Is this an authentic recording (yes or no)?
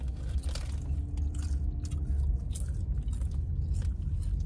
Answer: yes